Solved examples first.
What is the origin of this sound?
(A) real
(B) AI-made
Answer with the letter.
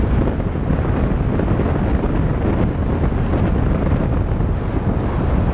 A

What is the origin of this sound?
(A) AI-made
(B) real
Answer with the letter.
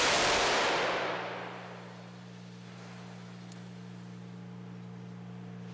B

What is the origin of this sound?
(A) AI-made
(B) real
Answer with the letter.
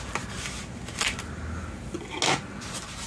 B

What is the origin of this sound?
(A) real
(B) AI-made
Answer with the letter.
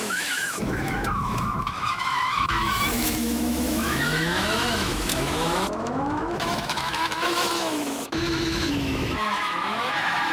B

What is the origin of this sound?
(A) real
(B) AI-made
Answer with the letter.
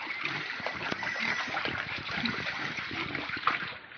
B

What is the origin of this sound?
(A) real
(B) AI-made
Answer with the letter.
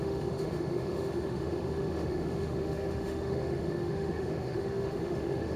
B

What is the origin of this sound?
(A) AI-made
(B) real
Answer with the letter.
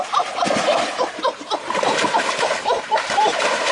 B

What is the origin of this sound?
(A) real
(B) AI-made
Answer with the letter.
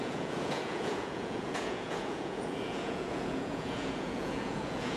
B